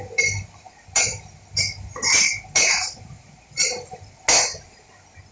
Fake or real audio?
real